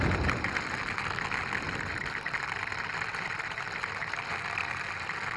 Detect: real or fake real